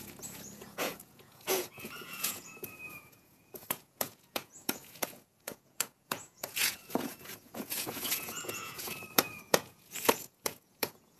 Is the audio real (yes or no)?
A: no